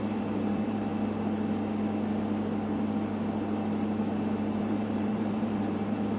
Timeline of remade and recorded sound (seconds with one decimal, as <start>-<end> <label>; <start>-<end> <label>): 0.0-0.9 remade; 0.9-4.6 recorded; 4.6-6.2 remade